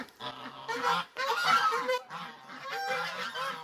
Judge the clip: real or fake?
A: real